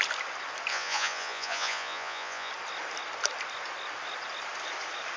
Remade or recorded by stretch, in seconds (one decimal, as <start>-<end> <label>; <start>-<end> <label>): 0.0-0.7 recorded; 0.7-2.5 remade; 2.5-5.2 recorded